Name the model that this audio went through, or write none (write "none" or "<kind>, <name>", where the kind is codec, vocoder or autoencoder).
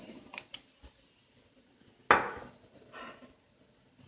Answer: none